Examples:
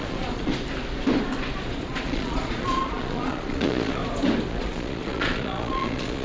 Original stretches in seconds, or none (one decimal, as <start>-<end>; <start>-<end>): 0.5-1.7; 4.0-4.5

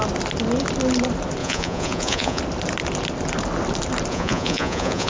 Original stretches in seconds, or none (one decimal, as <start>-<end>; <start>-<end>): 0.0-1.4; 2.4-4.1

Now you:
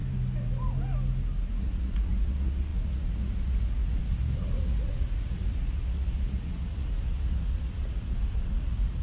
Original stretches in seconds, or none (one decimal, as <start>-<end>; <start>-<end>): 0.0-1.6

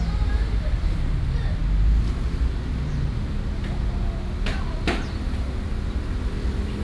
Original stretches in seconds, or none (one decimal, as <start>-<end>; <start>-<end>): 0.0-6.8